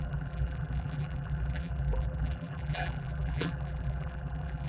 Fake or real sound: fake